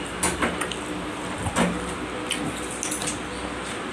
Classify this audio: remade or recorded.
recorded